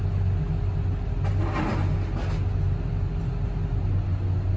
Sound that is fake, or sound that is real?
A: real